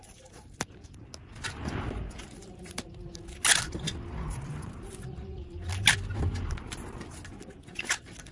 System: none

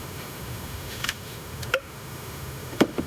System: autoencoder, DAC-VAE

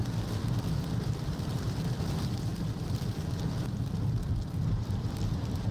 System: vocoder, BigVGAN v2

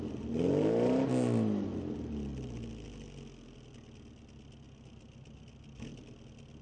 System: none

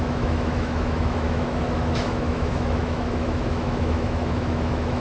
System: autoencoder, DAC-VAE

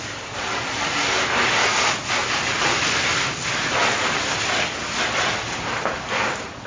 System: none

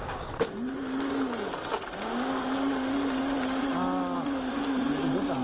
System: none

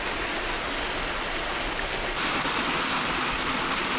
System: none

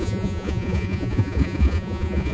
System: vocoder, Vocos